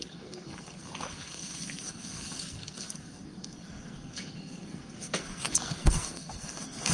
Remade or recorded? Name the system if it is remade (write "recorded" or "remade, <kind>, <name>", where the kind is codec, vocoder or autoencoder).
remade, codec, SNAC